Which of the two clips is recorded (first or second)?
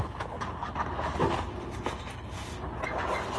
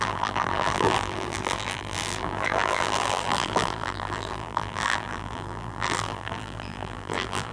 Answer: first